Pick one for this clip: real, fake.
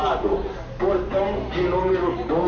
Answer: real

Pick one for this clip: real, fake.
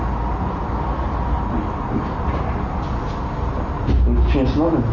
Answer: real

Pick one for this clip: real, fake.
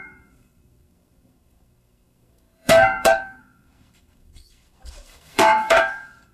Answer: fake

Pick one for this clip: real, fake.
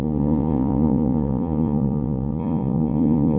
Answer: fake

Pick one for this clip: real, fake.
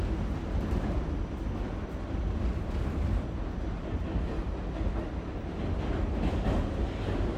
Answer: real